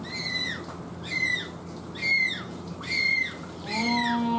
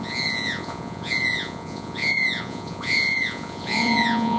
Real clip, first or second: first